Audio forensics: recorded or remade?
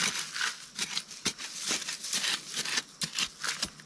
recorded